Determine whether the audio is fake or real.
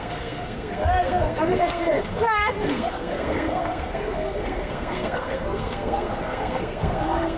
fake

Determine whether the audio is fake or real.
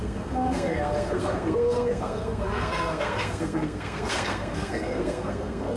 fake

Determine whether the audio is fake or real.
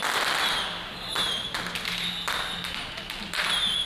real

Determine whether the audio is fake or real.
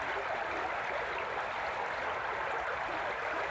real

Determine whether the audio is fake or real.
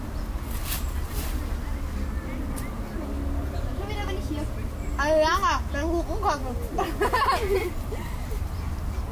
real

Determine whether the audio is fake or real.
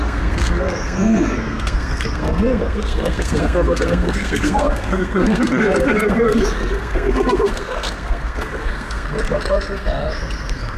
fake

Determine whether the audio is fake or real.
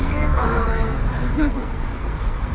fake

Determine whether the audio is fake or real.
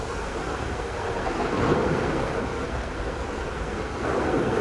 fake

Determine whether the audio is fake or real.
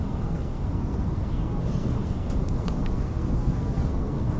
fake